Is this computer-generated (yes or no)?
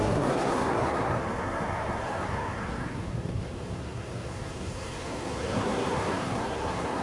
yes